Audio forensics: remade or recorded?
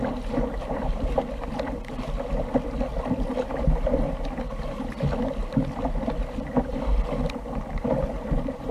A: recorded